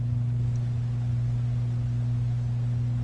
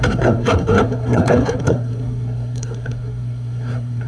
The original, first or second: first